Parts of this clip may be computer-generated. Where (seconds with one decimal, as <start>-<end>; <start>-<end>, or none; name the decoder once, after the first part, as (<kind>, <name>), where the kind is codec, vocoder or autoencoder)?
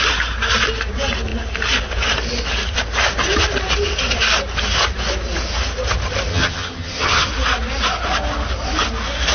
6.3-7.3 (vocoder, HiFi-GAN)